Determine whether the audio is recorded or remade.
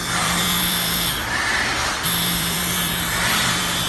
remade